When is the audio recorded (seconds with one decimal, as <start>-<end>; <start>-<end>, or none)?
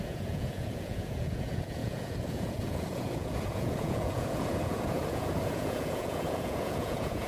none